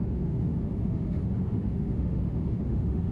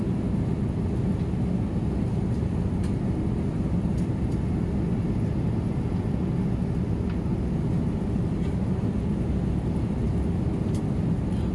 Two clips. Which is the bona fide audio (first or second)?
second